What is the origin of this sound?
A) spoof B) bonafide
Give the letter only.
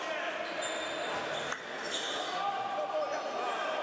B